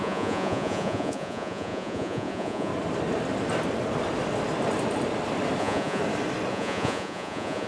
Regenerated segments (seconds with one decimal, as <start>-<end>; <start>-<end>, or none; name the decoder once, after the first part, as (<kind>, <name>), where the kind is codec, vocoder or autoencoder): 0.0-2.7 (vocoder, Vocos); 5.6-6.0; 6.5-7.7